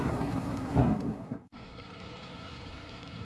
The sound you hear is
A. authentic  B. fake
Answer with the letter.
B